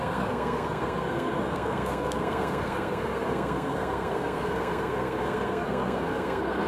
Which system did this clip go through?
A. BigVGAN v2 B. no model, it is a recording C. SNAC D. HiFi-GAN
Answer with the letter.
C